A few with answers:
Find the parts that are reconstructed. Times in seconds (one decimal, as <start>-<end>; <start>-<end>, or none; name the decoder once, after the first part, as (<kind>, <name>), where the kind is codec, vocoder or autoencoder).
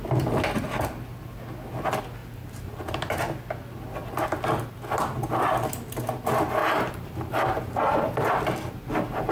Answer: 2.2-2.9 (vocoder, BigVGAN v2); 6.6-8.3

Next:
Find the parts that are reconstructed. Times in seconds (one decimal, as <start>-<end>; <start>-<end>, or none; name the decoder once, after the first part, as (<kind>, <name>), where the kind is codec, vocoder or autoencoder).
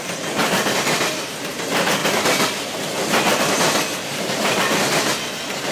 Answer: 0.0-2.0 (vocoder, BigVGAN v2); 4.2-5.7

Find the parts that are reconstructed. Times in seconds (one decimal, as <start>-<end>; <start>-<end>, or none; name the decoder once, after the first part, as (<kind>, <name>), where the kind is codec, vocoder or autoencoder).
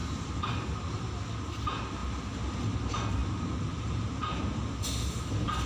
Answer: 0.0-1.2 (vocoder, BigVGAN v2); 3.2-5.3